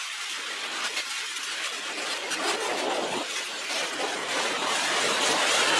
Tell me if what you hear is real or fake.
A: real